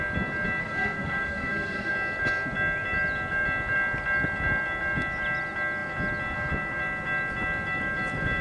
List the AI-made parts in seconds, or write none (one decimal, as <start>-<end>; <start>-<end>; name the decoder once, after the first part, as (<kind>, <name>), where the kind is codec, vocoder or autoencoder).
0.6-1.9 (codec, SNAC)